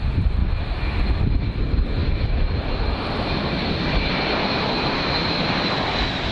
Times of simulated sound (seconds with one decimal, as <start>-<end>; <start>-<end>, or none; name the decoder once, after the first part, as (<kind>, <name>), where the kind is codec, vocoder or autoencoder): 0.0-0.4 (vocoder, BigVGAN v2); 1.1-6.3